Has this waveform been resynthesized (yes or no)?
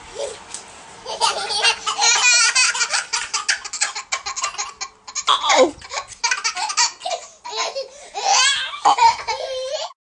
no